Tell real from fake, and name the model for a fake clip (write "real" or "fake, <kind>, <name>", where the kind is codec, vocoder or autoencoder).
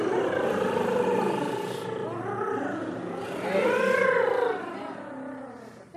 real